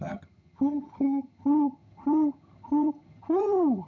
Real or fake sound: fake